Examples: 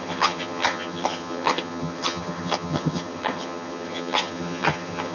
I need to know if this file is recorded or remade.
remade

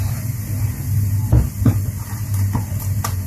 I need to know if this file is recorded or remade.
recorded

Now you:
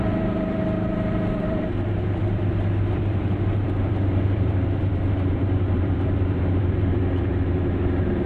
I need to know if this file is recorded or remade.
remade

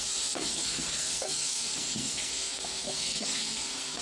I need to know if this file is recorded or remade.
remade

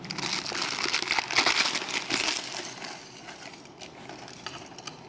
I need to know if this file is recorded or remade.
recorded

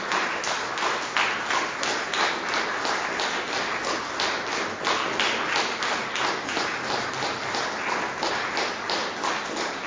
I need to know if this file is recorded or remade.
recorded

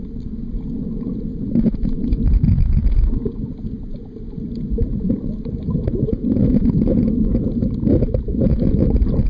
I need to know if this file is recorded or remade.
recorded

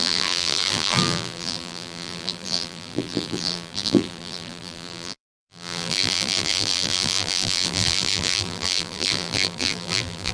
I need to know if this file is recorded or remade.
remade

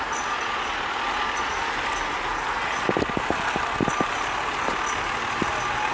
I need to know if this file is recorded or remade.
recorded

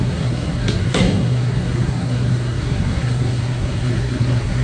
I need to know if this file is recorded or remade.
remade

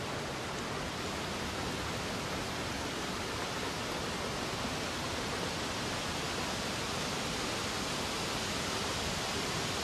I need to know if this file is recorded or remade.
recorded